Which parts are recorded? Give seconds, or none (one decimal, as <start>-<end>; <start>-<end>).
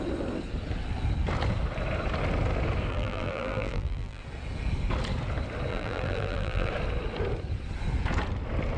0.0-2.9; 4.2-5.7; 6.7-8.8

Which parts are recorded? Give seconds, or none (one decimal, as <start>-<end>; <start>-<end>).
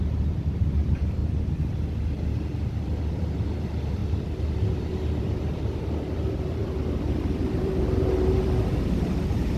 1.2-2.8; 4.0-5.2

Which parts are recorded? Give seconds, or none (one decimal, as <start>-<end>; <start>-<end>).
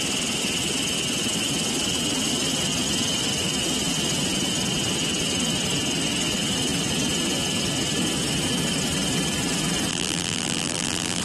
0.0-9.9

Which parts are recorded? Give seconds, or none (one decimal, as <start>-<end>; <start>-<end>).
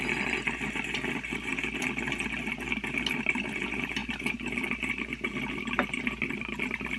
0.0-7.0